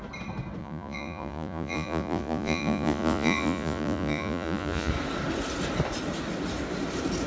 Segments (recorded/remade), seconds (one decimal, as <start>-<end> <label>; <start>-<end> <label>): 0.0-0.6 recorded; 0.6-4.9 remade; 4.9-7.3 recorded